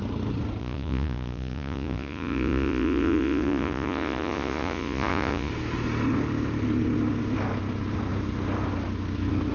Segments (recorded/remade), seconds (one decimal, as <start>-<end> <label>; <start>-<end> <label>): 0.0-0.6 recorded; 0.6-5.5 remade; 5.5-9.5 recorded